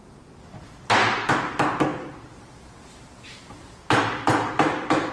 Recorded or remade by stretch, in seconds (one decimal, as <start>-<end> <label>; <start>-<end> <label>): 0.0-1.9 recorded; 1.9-5.1 remade